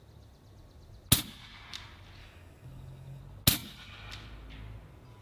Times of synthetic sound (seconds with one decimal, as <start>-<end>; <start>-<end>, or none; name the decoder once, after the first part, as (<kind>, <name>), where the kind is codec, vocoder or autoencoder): 2.2-3.2 (codec, DAC)